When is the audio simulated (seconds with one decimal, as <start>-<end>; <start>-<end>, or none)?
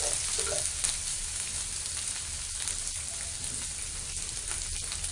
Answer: 1.1-1.6